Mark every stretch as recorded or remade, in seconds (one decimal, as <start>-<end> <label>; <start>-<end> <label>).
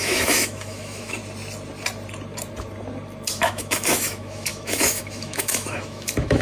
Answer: 0.0-1.2 remade; 1.2-3.3 recorded; 3.3-6.4 remade